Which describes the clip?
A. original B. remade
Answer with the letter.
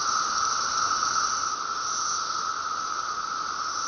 A